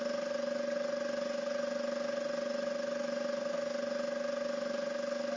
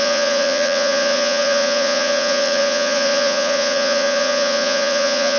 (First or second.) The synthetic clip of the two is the second